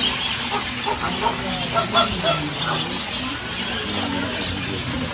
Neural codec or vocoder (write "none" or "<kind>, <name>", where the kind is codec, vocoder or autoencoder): none